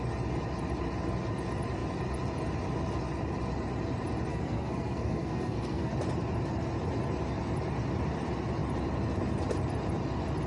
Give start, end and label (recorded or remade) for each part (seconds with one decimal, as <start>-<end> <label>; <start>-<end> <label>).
0.0-4.3 recorded; 4.3-5.9 remade; 5.9-10.5 recorded